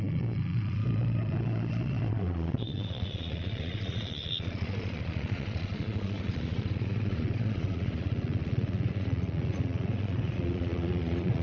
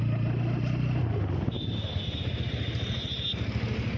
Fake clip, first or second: first